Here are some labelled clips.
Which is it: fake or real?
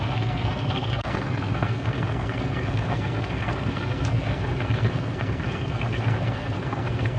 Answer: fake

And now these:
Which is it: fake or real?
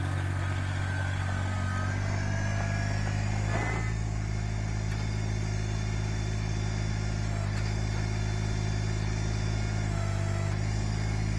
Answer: real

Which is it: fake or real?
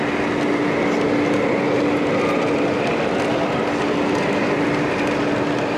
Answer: real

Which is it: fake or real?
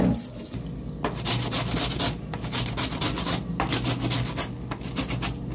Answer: real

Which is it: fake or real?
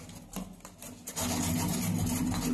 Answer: real